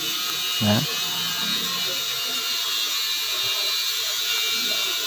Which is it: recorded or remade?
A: recorded